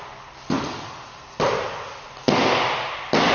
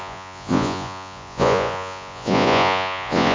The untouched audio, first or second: first